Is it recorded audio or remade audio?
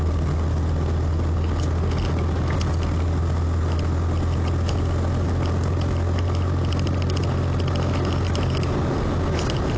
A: recorded